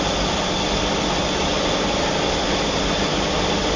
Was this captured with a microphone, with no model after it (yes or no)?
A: yes